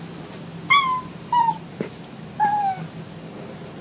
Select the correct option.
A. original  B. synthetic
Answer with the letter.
A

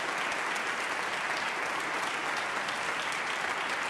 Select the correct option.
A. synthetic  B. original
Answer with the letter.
B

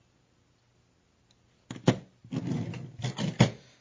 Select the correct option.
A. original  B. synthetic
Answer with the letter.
A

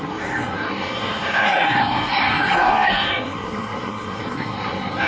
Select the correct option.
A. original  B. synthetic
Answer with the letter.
B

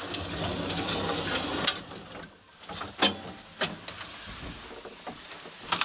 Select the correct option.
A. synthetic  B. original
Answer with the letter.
B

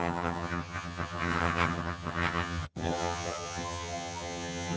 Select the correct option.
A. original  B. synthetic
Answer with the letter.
B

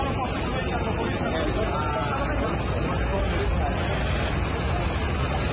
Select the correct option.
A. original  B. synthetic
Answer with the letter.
A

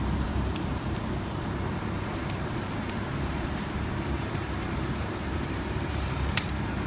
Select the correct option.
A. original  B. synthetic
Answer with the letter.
B